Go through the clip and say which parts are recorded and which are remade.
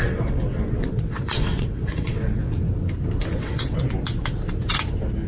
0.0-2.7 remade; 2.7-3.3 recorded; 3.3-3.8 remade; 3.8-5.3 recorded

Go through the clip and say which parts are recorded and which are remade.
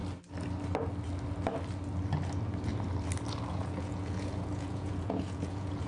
0.0-3.5 recorded; 3.5-5.9 remade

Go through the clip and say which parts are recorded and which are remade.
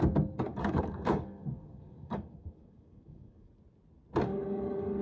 0.0-0.5 recorded; 0.5-3.5 remade; 3.5-4.3 recorded; 4.3-5.0 remade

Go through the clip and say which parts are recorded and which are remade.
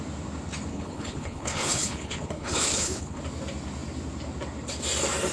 0.0-0.7 recorded; 0.7-3.2 remade; 3.2-5.3 recorded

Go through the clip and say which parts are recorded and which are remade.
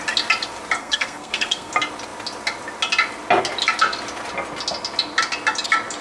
0.0-0.8 recorded; 0.8-1.7 remade; 1.7-6.0 recorded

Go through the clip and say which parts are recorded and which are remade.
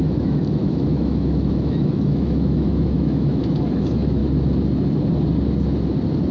0.0-4.2 remade; 4.2-6.3 recorded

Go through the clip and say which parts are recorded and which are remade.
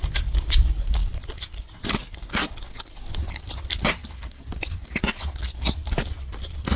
0.0-5.8 remade; 5.8-6.8 recorded